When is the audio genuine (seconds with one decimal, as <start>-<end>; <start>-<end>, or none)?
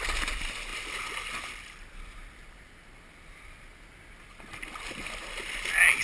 0.0-6.0